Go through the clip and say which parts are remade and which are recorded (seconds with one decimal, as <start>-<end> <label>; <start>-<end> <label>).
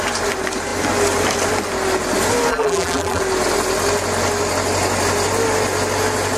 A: 0.0-2.5 recorded; 2.5-3.2 remade; 3.2-6.4 recorded